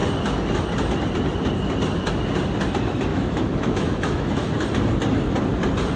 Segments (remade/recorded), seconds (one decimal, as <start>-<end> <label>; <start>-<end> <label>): 0.0-3.1 recorded; 3.1-4.5 remade; 4.5-6.0 recorded